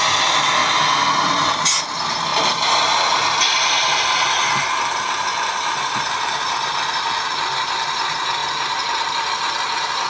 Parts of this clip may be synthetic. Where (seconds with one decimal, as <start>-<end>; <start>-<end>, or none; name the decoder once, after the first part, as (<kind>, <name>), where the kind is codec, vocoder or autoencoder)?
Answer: none